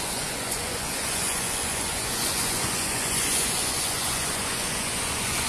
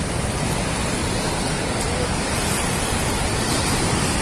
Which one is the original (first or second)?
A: second